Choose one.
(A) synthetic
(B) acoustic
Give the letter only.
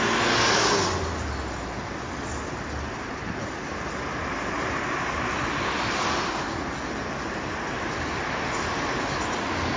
B